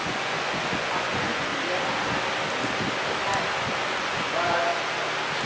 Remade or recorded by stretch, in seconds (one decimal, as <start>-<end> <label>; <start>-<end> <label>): 0.0-1.5 remade; 1.5-3.7 recorded; 3.7-4.7 remade; 4.7-5.5 recorded